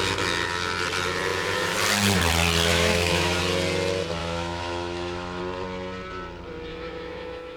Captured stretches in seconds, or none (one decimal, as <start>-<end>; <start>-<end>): 0.0-2.7; 3.4-4.2; 5.4-6.7